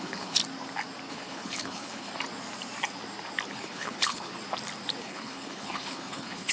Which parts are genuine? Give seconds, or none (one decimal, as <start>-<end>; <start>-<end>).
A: 0.4-1.1; 2.1-3.5; 4.3-5.0